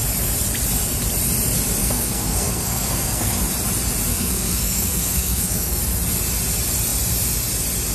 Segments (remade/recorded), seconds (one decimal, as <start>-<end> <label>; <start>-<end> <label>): 0.0-1.8 recorded; 1.8-3.4 remade; 3.4-4.1 recorded; 4.1-5.8 remade; 5.8-7.9 recorded